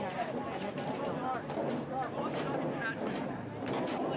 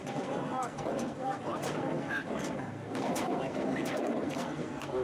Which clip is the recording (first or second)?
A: first